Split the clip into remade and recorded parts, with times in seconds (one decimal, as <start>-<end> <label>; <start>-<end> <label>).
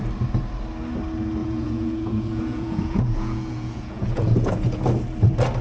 0.0-1.4 recorded; 1.4-4.8 remade; 4.8-5.6 recorded